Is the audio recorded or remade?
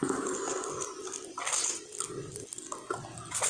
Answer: recorded